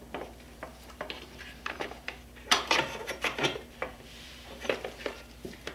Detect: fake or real fake